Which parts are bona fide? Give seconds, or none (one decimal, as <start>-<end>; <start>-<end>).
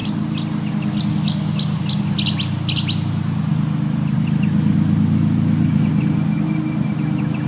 0.0-7.5